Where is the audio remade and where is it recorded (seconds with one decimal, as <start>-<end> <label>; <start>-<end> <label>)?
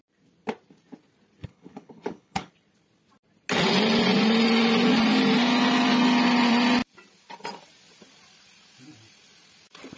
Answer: 0.0-1.4 recorded; 1.4-2.5 remade; 2.5-10.0 recorded